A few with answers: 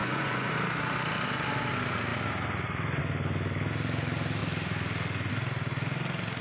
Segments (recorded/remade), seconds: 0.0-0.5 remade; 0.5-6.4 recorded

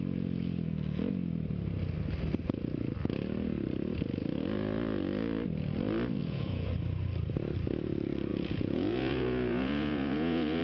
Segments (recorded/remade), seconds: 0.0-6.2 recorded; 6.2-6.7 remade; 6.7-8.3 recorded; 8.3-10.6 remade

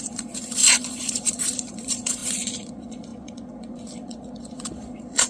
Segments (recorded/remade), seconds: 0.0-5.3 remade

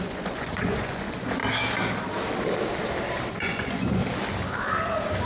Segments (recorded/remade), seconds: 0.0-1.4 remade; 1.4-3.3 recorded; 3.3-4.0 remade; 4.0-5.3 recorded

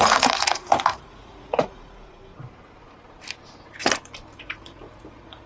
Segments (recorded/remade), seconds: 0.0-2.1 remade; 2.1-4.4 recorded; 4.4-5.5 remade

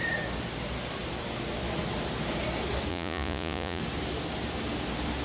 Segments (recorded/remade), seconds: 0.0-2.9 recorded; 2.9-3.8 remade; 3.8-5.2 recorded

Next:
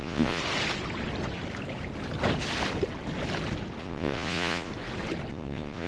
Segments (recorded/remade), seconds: 0.0-0.4 remade; 0.4-3.8 recorded; 3.8-4.7 remade; 4.7-5.3 recorded; 5.3-5.9 remade